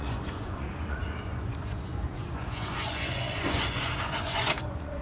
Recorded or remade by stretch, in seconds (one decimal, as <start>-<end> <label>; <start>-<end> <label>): 0.0-5.0 remade